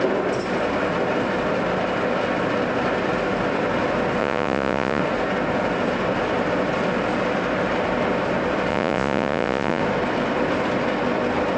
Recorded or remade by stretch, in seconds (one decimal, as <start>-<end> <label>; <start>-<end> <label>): 0.0-4.2 recorded; 4.2-5.0 remade; 5.0-8.7 recorded; 8.7-9.8 remade; 9.8-11.6 recorded